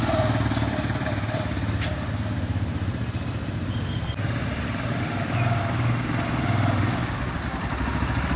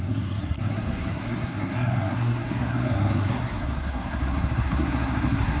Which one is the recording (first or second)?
first